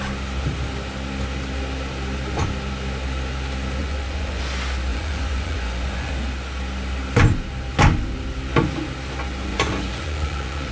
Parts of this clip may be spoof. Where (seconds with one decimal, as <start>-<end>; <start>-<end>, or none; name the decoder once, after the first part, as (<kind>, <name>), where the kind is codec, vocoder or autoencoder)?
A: 3.8-4.4 (vocoder, Vocos); 4.9-6.1; 9.5-10.7